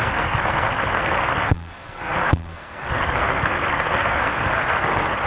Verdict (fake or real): fake